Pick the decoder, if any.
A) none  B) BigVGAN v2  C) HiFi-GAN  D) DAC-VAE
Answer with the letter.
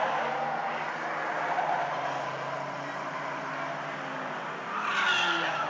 A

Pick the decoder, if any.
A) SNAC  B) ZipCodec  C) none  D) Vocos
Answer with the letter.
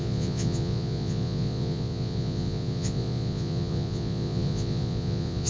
D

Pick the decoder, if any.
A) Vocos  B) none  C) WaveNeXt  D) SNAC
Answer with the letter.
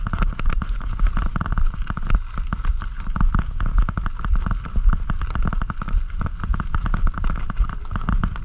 B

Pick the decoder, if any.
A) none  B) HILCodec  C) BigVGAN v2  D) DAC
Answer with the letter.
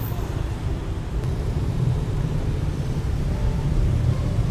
C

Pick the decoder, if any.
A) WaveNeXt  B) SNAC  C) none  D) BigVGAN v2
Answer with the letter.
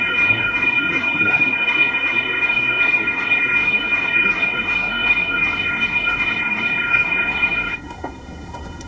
B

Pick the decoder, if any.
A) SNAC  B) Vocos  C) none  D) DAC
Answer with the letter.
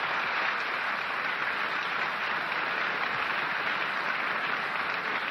C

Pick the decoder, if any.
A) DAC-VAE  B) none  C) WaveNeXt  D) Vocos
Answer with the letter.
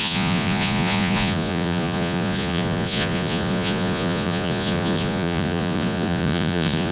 D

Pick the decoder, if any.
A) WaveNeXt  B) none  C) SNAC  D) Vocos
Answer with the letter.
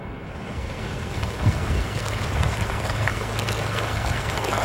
C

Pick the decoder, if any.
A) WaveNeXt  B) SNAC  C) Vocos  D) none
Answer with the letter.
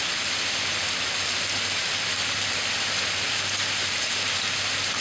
D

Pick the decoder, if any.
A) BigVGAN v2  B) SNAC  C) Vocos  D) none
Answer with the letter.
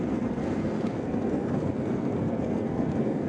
B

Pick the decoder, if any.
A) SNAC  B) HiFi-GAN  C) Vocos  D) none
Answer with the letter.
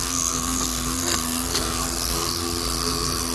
A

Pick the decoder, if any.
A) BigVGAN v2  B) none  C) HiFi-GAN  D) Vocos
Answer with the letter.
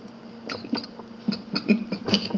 B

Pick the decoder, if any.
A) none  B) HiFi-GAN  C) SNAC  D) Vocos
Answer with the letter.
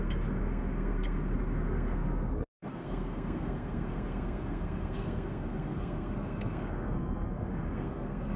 C